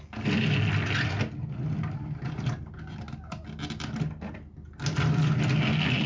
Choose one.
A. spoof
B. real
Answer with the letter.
B